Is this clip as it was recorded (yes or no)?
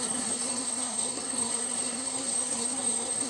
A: no